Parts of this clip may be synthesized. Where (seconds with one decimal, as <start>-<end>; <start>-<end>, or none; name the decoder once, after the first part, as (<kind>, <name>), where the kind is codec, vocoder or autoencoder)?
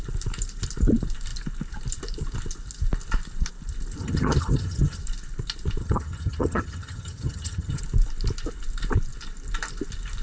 4.0-5.0 (vocoder, HiFi-GAN); 5.8-7.8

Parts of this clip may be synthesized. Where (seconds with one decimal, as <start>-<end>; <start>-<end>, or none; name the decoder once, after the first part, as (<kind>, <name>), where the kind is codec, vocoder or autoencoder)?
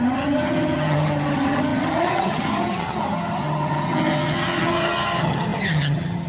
0.0-6.3 (vocoder, HiFi-GAN)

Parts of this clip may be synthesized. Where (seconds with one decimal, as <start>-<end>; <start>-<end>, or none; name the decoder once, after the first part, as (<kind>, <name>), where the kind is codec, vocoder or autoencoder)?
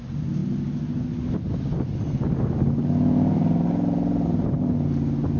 none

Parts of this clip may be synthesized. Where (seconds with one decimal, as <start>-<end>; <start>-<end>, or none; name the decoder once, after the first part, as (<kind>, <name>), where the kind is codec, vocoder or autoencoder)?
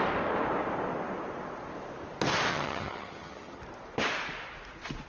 2.5-3.6 (vocoder, HiFi-GAN)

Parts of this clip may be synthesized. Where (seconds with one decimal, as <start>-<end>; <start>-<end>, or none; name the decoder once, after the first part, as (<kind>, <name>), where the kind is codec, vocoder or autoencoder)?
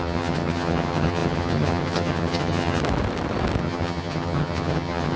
0.0-2.8 (vocoder, HiFi-GAN); 3.6-5.2